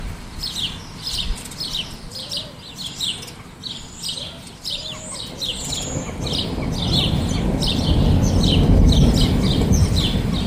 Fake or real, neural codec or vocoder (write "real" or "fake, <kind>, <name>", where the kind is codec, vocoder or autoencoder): real